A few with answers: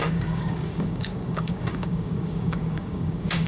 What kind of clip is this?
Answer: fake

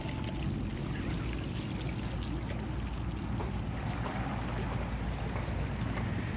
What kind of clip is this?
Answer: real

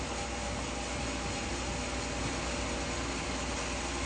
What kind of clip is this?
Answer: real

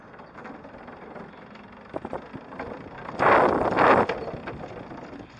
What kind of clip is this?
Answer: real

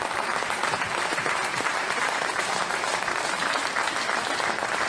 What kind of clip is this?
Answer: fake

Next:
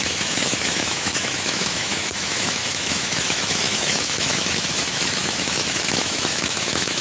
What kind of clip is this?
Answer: fake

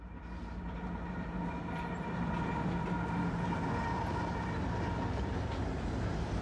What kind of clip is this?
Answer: real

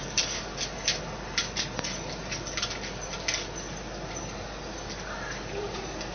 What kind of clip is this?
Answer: real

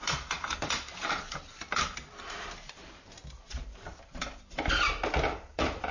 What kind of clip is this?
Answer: fake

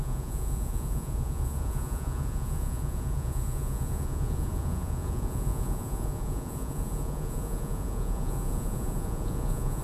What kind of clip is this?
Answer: fake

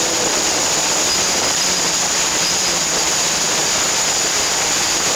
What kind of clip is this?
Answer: fake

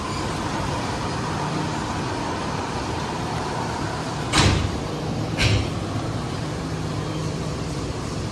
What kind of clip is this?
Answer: fake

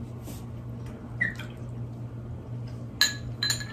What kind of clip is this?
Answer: real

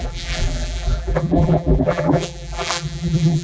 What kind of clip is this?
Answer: fake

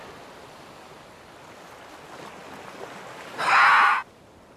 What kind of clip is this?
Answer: real